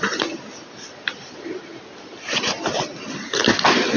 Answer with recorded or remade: recorded